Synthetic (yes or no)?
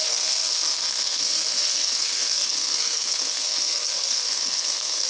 yes